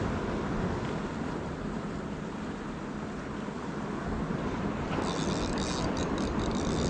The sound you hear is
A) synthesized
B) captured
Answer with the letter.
B